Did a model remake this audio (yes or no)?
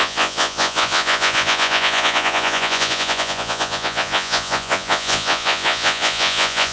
yes